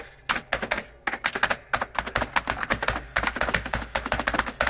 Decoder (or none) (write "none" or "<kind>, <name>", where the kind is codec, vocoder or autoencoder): none